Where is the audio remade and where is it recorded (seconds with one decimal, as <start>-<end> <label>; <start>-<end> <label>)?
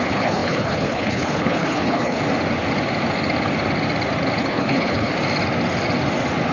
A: 0.0-2.2 remade; 2.2-4.4 recorded; 4.4-5.1 remade; 5.1-6.5 recorded